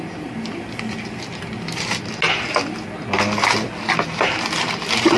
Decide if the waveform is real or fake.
real